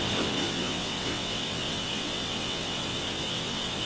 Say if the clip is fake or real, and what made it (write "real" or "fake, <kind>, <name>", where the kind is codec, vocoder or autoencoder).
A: fake, vocoder, WaveNeXt